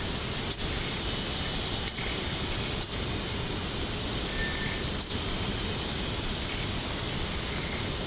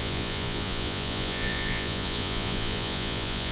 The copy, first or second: second